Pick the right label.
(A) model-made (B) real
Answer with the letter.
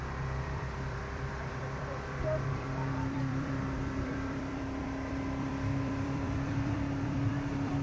A